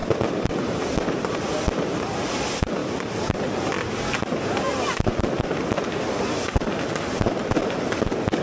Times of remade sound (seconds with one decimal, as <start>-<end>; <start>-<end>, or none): none